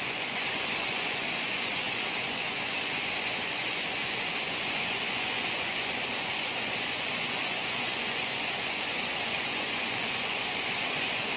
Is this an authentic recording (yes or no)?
no